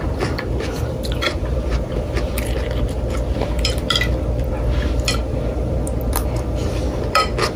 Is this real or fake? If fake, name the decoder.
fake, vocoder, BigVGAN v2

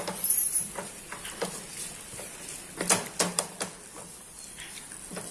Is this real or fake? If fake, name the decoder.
real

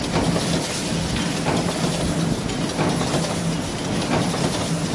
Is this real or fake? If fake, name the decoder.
real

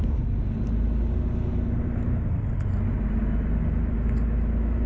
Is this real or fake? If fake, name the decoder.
real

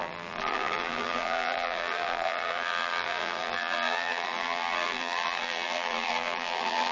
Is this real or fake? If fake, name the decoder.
fake, vocoder, BigVGAN v2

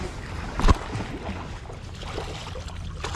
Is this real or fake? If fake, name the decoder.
real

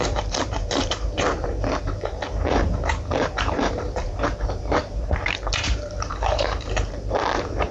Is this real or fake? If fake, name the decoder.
fake, vocoder, BigVGAN v2